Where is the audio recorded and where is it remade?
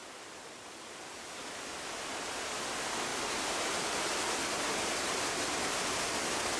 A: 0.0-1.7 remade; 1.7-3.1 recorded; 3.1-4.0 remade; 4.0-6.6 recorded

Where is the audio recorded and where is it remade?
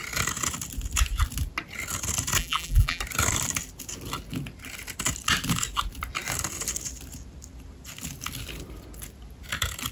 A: 0.0-2.4 recorded; 2.4-3.0 remade; 3.0-9.9 recorded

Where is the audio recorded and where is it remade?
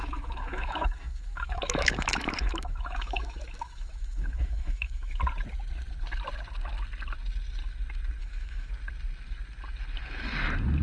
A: 0.0-5.2 remade; 5.2-8.2 recorded; 8.2-8.7 remade; 8.7-10.8 recorded